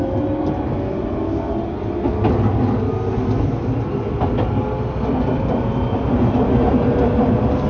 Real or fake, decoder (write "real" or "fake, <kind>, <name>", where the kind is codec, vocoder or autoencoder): real